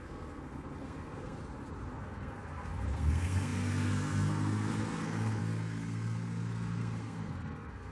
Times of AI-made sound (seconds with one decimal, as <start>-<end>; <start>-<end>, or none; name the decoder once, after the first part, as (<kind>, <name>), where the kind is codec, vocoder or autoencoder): 0.0-1.4 (codec, SNAC); 1.9-7.9